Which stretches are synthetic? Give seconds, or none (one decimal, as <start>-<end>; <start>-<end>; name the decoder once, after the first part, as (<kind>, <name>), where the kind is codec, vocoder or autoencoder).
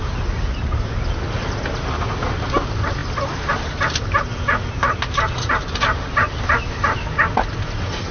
none